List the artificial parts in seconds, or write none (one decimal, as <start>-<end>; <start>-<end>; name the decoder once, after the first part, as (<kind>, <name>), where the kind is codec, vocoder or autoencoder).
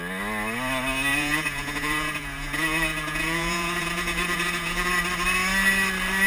1.1-4.9 (vocoder, Vocos)